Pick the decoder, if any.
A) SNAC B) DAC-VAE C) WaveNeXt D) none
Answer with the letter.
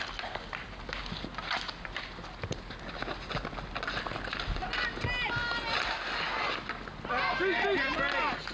D